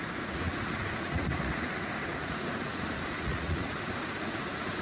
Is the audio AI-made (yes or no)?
yes